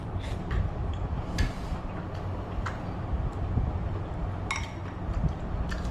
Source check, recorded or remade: recorded